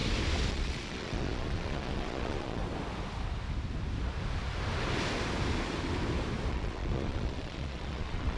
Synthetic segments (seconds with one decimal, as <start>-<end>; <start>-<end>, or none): 0.5-2.6; 6.5-8.4